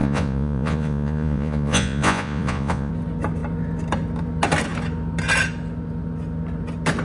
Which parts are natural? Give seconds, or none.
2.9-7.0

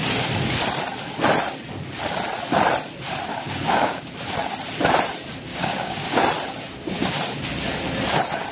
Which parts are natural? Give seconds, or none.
0.0-3.3; 4.1-5.5; 6.2-8.5

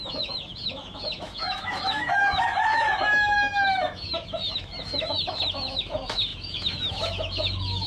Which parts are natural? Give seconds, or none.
none